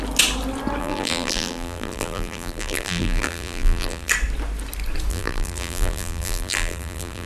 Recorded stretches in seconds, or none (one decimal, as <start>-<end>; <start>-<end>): 0.0-0.8; 4.1-5.1